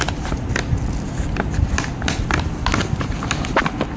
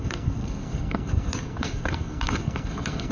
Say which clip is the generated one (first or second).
second